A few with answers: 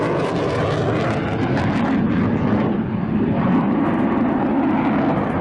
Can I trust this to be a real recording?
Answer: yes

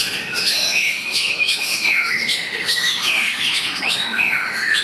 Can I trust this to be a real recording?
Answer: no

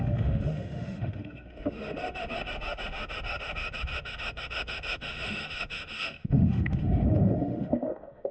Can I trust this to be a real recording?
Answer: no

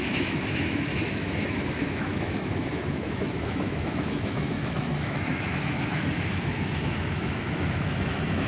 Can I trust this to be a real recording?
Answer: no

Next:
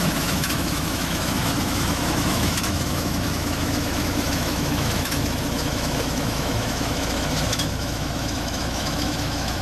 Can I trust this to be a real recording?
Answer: no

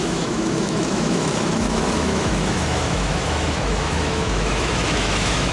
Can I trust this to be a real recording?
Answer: no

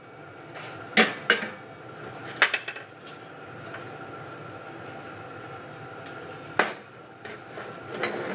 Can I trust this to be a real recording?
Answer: yes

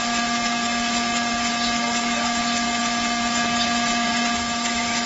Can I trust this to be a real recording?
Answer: no